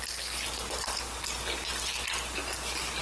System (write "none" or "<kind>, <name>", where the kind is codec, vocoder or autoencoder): none